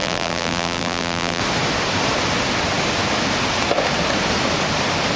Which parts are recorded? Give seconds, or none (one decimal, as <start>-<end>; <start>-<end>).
1.4-5.2